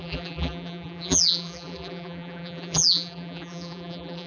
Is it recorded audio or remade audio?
remade